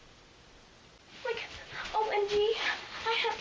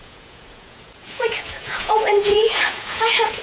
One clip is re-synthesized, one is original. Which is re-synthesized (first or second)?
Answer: second